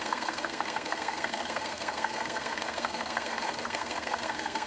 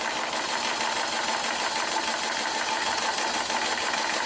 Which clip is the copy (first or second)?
first